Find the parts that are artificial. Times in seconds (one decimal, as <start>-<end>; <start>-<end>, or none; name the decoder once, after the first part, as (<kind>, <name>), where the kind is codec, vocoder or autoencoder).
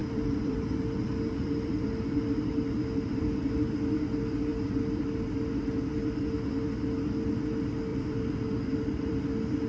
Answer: 0.0-2.4 (vocoder, BigVGAN v2); 4.5-5.5; 7.9-9.2